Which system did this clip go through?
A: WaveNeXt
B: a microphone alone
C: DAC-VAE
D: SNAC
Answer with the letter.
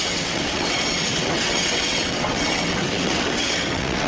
A